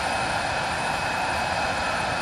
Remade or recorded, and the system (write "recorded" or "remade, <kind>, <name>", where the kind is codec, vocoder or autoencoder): recorded